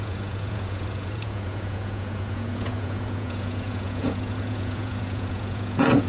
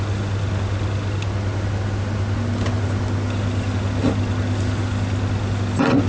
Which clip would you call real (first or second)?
second